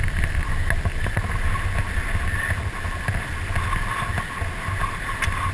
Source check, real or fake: real